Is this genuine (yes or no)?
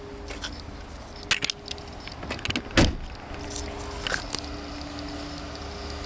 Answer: yes